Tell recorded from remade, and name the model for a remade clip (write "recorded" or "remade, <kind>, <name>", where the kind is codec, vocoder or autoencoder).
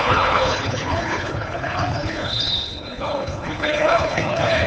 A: remade, codec, HILCodec